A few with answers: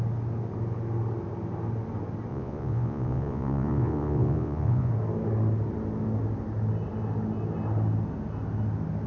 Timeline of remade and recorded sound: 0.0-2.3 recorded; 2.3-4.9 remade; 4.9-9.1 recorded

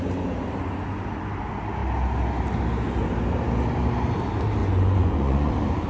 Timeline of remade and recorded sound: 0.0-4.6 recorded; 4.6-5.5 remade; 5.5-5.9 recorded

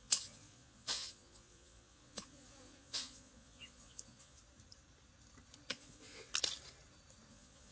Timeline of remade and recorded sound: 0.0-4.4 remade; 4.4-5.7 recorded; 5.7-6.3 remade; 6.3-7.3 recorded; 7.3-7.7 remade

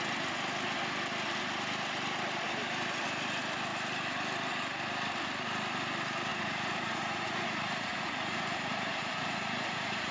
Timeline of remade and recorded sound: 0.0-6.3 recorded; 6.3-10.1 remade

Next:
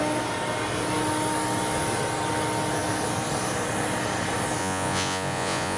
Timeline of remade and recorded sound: 0.0-4.6 recorded; 4.6-5.8 remade